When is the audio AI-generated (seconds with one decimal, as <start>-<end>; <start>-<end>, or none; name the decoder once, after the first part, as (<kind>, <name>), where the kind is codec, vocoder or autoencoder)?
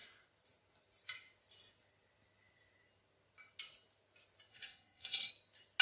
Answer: 4.5-5.3 (codec, SNAC)